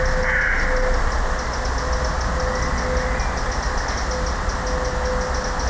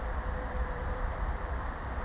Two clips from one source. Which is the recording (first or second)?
first